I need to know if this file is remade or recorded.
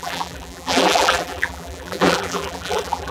remade